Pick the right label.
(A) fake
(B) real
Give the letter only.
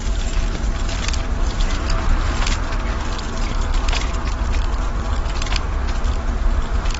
B